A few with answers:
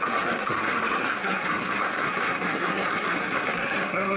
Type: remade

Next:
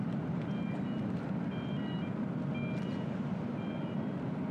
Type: recorded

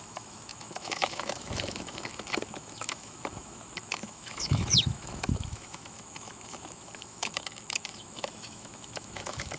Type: remade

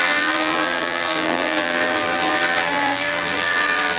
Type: remade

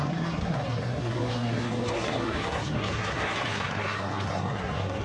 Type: remade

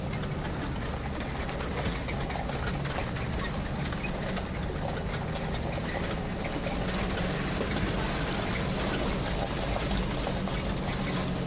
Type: recorded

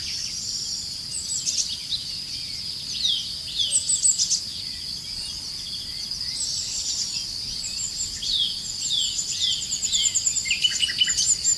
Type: recorded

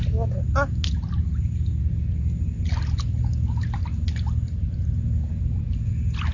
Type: recorded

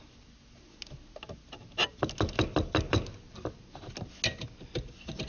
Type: recorded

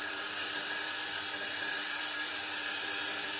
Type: remade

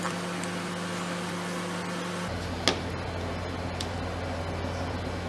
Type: recorded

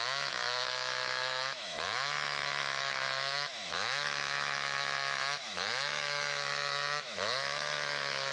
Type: remade